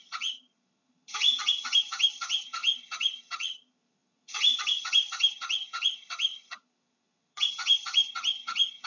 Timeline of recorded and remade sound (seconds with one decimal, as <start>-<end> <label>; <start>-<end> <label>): 0.0-8.9 remade